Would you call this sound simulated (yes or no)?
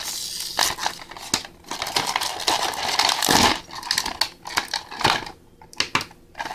no